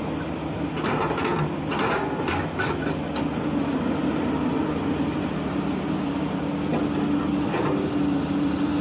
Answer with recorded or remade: recorded